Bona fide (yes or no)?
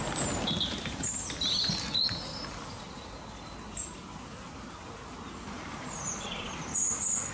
yes